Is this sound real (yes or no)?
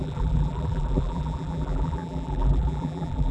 no